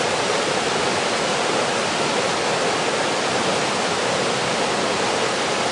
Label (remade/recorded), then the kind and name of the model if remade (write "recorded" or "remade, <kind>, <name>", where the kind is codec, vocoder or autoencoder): recorded